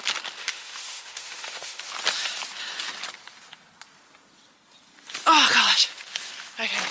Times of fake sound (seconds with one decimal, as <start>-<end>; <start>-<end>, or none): 0.4-1.8